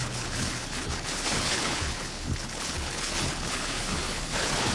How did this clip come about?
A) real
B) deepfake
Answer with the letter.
B